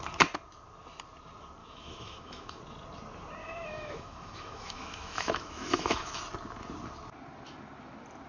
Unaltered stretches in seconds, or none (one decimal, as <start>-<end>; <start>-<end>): 0.0-1.6; 2.6-3.4; 6.2-8.3